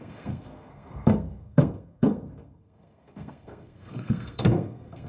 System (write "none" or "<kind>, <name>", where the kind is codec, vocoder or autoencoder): codec, SNAC